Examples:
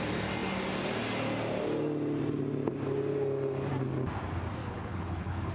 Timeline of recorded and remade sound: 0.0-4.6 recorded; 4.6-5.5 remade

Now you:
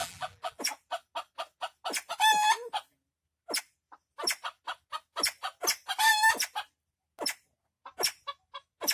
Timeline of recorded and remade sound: 0.0-0.6 remade; 0.6-8.9 recorded

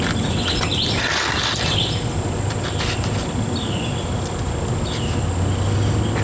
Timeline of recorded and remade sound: 0.0-0.7 recorded; 0.7-4.4 remade; 4.4-6.2 recorded

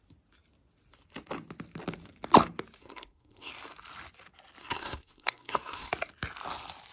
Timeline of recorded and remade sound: 0.0-2.8 recorded; 2.8-3.5 remade; 3.5-4.6 recorded; 4.6-5.9 remade; 5.9-6.9 recorded

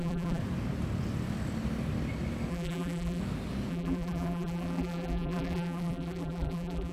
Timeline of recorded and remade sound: 0.0-0.4 remade; 0.4-2.5 recorded; 2.5-3.2 remade; 3.2-3.7 recorded; 3.7-6.9 remade

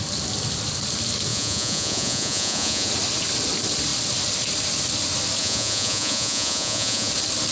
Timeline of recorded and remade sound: 0.0-1.3 recorded; 1.3-2.9 remade; 2.9-5.4 recorded; 5.4-7.1 remade; 7.1-7.5 recorded

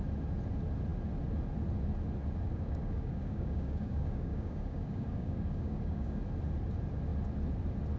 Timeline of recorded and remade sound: 0.0-2.5 recorded; 2.5-6.2 remade; 6.2-8.0 recorded

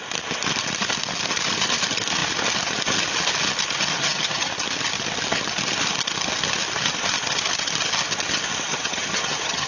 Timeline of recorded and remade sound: 0.0-3.9 recorded; 3.9-4.5 remade; 4.5-8.7 recorded; 8.7-9.7 remade